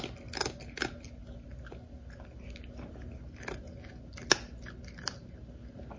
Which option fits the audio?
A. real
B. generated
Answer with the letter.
A